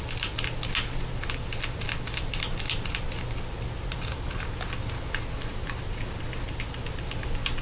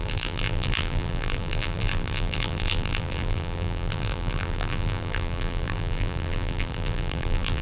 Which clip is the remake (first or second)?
second